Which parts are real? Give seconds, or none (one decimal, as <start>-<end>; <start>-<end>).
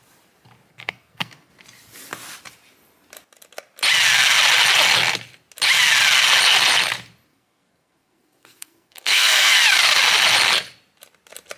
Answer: 0.0-0.7; 1.5-7.3; 9.5-11.6